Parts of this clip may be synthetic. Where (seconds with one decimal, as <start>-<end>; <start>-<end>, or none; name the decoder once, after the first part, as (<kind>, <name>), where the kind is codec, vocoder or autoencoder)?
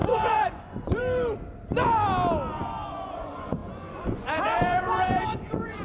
0.0-1.0 (vocoder, Vocos); 2.9-5.8